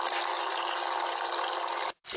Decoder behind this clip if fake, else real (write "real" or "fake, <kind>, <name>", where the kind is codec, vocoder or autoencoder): real